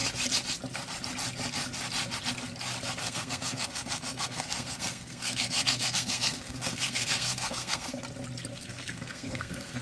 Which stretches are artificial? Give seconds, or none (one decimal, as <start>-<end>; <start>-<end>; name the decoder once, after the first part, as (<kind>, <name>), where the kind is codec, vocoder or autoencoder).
3.0-8.0 (codec, SNAC); 8.5-9.8

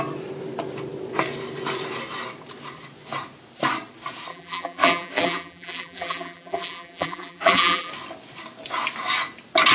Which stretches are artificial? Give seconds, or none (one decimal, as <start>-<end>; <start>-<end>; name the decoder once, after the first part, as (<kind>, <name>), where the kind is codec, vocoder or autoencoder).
4.3-7.9 (vocoder, BigVGAN v2)

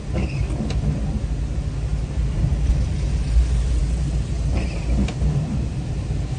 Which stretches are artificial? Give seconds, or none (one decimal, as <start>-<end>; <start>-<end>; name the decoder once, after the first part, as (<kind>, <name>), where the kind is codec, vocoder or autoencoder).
3.8-4.8 (vocoder, BigVGAN v2)

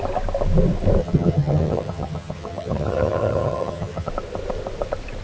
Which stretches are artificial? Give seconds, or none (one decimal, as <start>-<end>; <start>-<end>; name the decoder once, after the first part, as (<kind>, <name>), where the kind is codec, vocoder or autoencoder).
1.0-4.1 (vocoder, HiFi-GAN)

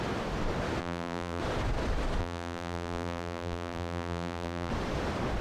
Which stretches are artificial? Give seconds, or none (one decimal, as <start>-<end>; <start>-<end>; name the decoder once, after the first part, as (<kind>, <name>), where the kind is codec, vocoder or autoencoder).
0.8-1.4 (vocoder, BigVGAN v2); 2.2-4.7

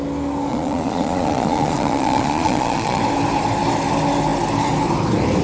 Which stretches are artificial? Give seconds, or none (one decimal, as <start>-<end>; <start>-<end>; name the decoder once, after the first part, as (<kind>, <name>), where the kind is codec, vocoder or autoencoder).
0.5-3.0 (vocoder, Vocos)

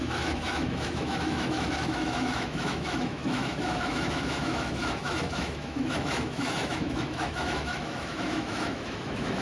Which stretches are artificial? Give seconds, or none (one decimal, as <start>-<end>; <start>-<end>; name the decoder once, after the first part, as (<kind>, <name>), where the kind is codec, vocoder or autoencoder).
0.0-9.4 (autoencoder, DAC-VAE)

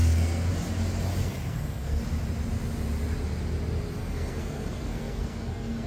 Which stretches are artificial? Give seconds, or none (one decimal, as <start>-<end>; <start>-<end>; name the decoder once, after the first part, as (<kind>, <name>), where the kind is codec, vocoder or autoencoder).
0.0-0.5 (codec, SNAC); 1.2-2.0; 4.0-5.9